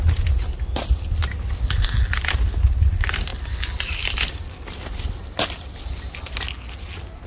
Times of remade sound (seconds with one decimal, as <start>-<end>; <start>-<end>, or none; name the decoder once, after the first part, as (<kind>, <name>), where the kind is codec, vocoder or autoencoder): none